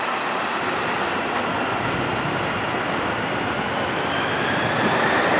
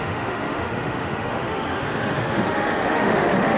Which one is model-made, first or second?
second